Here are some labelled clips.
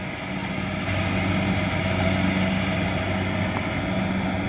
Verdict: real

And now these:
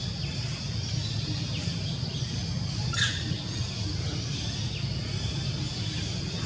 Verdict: real